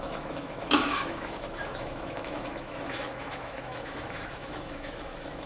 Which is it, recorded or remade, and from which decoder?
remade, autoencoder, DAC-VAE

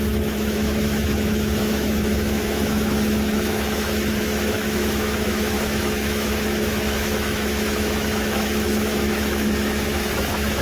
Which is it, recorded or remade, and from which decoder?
remade, autoencoder, DAC-VAE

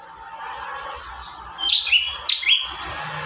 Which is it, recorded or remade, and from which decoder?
recorded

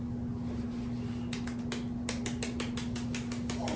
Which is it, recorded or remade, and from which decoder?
recorded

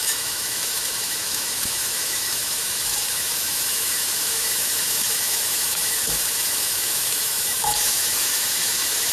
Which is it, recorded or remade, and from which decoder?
remade, autoencoder, DAC-VAE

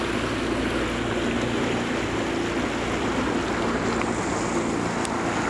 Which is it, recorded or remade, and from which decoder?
recorded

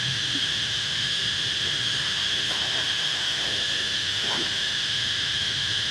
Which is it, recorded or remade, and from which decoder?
remade, autoencoder, DAC-VAE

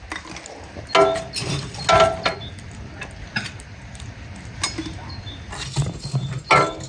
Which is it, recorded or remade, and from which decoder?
recorded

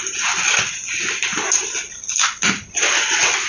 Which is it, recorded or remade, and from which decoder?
recorded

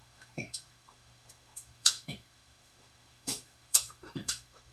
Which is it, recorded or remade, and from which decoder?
remade, autoencoder, DAC-VAE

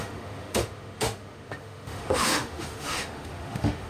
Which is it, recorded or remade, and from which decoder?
remade, autoencoder, DAC-VAE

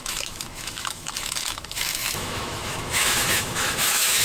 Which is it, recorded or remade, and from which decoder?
remade, autoencoder, DAC-VAE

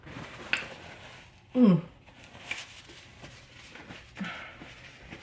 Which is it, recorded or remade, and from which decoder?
recorded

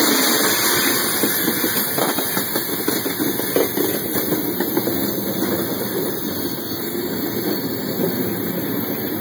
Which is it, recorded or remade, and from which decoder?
recorded